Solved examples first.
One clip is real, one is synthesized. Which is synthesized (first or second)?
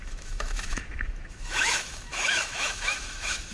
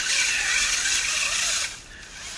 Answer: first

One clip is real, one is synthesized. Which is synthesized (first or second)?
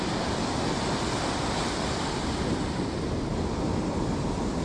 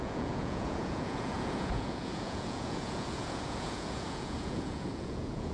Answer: second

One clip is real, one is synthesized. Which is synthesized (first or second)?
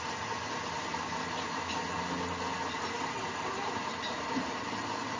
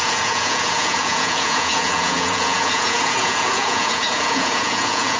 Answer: second